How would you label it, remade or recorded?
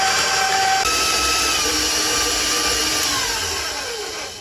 recorded